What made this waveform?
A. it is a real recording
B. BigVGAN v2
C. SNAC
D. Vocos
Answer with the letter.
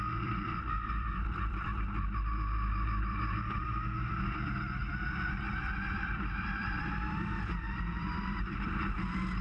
B